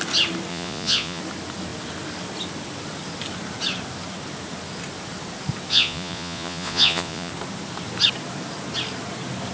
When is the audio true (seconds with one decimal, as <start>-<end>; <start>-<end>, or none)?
0.0-0.5; 1.2-5.7; 7.3-9.5